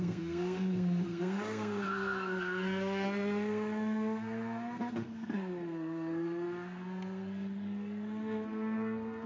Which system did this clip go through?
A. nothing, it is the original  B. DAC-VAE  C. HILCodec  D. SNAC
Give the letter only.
D